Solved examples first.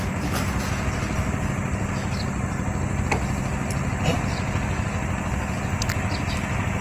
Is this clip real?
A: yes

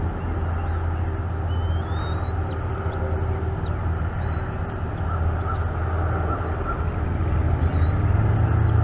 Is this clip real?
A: yes